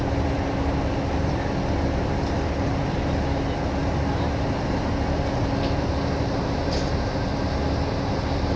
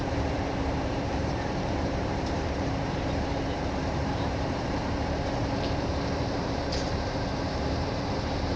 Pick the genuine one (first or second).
first